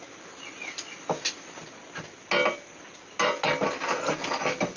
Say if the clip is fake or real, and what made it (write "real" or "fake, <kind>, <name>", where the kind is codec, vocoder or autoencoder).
real